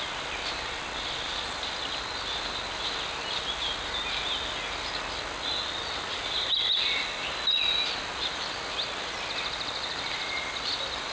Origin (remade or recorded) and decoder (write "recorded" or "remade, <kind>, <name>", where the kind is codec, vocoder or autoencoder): recorded